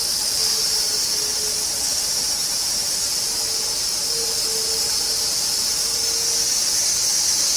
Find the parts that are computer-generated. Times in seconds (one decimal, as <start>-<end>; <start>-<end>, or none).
none